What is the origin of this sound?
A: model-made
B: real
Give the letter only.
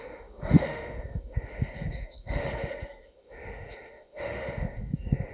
A